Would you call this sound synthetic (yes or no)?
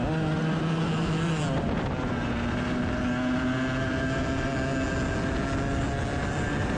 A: no